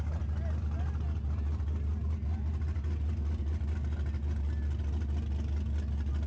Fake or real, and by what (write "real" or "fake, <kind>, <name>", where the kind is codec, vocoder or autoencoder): real